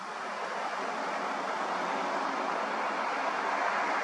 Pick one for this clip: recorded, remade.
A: recorded